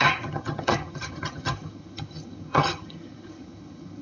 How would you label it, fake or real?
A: fake